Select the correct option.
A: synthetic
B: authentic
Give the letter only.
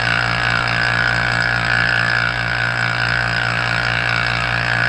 B